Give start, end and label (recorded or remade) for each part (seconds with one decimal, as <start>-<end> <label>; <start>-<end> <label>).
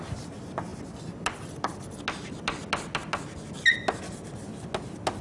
0.0-5.2 recorded